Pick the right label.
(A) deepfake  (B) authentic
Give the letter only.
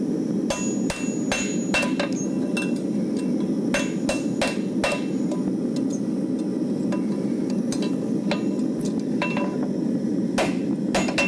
B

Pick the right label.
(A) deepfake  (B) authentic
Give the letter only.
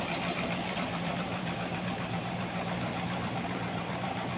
A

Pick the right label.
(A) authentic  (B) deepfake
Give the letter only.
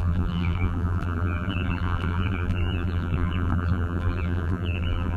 B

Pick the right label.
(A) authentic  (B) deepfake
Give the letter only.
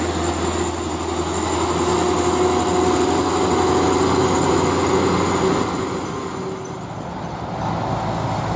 A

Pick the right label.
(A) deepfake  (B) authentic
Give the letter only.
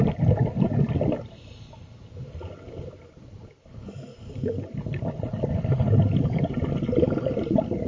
B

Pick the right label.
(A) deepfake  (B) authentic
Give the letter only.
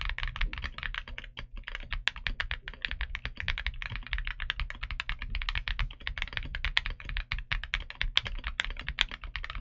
B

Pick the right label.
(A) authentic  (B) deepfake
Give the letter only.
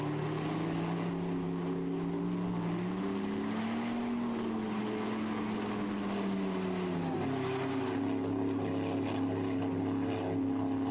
A